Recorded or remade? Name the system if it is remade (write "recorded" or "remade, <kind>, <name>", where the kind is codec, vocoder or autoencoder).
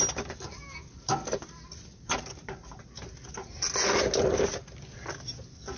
recorded